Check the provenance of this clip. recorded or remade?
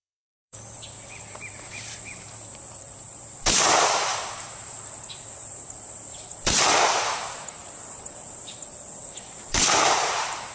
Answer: remade